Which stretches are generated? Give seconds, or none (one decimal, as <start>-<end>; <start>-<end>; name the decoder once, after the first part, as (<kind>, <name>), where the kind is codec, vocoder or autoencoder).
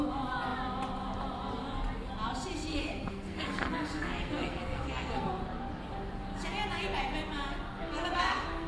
2.7-5.3 (codec, SNAC); 7.7-8.7